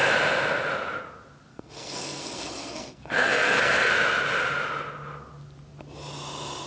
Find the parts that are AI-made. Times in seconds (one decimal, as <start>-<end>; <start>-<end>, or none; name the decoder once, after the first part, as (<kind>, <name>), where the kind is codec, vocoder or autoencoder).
1.5-3.9 (codec, SNAC)